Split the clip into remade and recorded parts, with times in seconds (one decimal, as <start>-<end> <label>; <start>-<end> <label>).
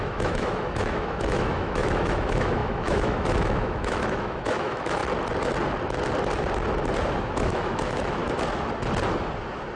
0.0-5.0 remade; 5.0-7.2 recorded; 7.2-8.2 remade; 8.2-9.8 recorded